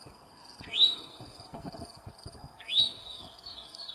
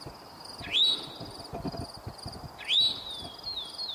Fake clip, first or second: first